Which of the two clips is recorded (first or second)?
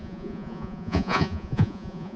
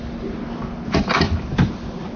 second